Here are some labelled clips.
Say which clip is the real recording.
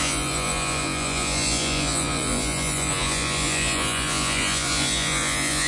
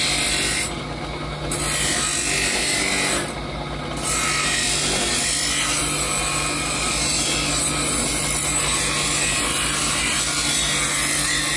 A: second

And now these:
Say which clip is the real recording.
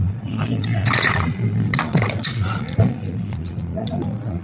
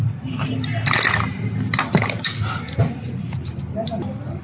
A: second